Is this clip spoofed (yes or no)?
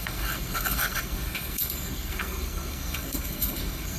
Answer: yes